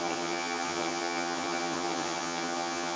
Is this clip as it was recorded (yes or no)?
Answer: no